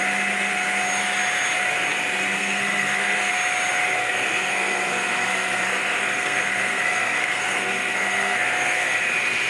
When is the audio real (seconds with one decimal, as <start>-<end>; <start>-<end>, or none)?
0.0-2.4; 3.3-4.0; 9.0-9.5